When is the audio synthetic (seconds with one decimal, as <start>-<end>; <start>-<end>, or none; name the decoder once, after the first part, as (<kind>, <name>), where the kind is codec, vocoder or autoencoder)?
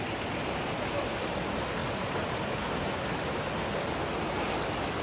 none